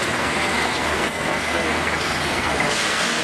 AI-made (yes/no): yes